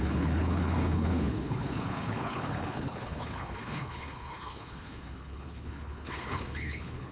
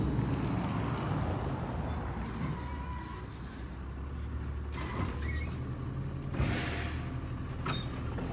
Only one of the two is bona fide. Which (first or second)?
second